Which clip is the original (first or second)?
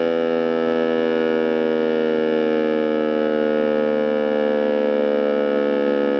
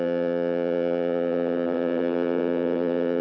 first